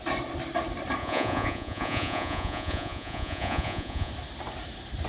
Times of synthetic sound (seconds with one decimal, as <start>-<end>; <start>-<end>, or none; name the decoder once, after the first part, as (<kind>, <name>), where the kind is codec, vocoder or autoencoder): 1.0-4.1 (vocoder, Vocos)